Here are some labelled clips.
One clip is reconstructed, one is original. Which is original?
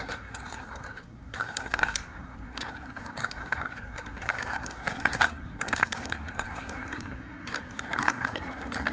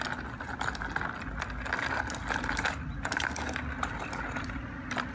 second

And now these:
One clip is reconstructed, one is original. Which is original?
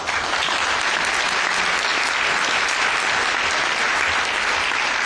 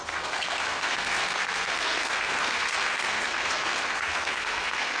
first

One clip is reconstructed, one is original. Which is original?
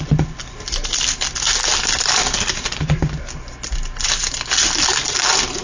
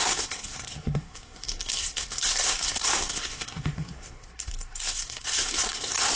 first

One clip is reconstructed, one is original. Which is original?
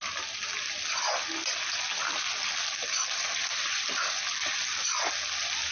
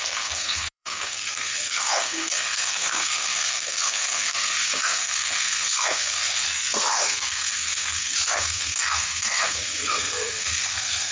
first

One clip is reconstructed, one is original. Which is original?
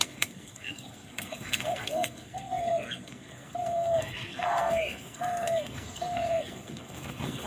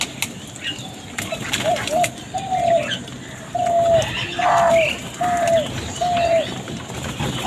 second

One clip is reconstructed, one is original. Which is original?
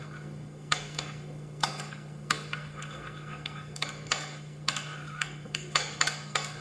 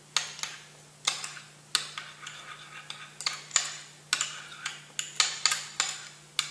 second